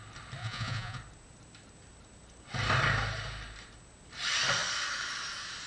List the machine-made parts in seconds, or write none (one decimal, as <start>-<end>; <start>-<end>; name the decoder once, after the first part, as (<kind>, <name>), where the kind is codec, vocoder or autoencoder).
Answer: 0.4-1.0 (vocoder, Vocos)